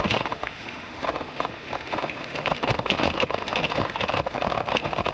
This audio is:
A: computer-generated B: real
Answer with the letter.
A